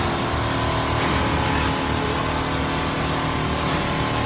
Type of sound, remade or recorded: recorded